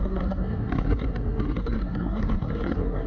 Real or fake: fake